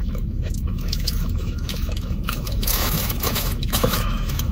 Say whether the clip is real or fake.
fake